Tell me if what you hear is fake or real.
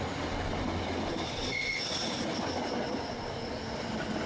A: real